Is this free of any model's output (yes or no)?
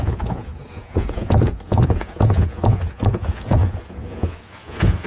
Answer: no